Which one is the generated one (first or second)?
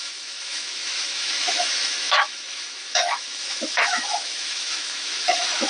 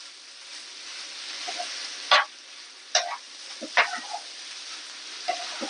first